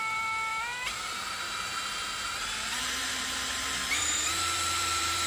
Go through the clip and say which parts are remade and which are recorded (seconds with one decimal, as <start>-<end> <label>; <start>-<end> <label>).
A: 0.0-5.3 remade